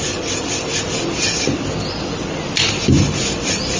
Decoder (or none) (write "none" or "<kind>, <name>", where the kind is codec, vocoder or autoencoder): vocoder, BigVGAN v2